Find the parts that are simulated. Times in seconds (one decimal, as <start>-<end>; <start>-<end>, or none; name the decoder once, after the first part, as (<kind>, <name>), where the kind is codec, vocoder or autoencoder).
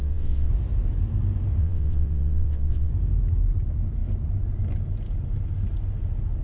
0.0-0.5 (vocoder, WaveNeXt); 1.6-2.9